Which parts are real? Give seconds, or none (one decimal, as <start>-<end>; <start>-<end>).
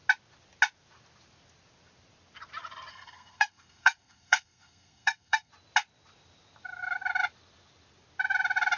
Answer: 0.0-2.9; 5.5-8.8